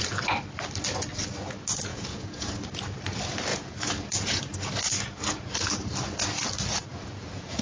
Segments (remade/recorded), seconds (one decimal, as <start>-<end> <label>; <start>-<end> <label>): 0.0-1.9 recorded; 1.9-2.5 remade; 2.5-3.5 recorded; 3.5-4.4 remade; 4.4-6.9 recorded; 6.9-7.6 remade